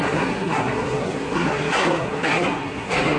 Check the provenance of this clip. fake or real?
fake